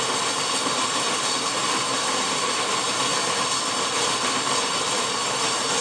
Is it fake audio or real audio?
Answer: real